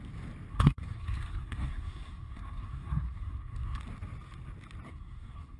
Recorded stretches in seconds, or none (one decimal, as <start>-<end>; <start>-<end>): 0.0-0.5; 3.8-4.9